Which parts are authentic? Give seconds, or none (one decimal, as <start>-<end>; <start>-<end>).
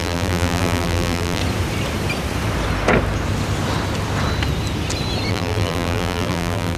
1.4-5.3